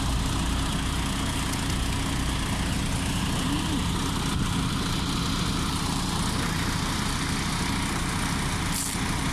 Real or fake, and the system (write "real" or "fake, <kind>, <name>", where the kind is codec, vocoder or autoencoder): real